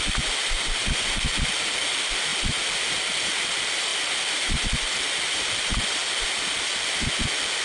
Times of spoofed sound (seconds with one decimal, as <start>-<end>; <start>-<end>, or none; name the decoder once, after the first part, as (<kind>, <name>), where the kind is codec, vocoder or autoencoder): none